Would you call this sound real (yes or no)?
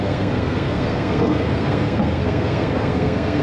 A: no